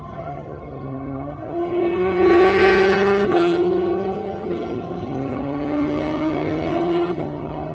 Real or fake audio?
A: fake